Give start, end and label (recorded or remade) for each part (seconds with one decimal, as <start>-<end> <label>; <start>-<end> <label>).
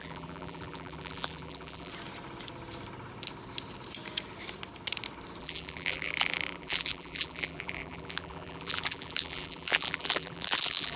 0.0-1.9 remade; 1.9-5.4 recorded; 5.4-11.0 remade